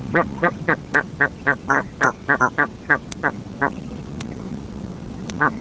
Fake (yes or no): yes